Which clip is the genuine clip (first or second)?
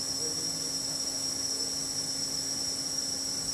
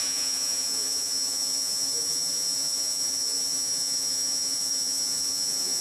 first